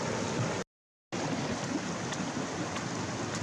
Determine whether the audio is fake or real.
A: real